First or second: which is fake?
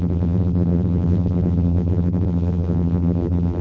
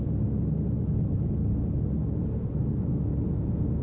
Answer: first